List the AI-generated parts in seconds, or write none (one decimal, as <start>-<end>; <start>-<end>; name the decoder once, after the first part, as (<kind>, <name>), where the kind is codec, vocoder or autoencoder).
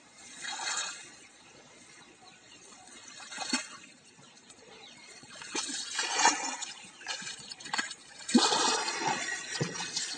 0.0-3.0 (vocoder, Vocos); 4.5-10.2